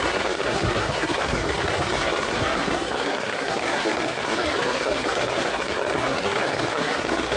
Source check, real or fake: fake